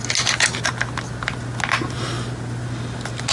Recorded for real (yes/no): yes